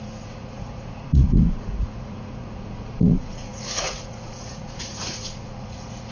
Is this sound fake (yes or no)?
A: yes